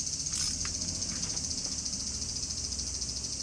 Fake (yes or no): no